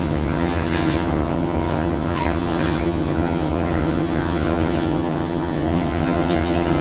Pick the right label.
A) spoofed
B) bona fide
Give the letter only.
A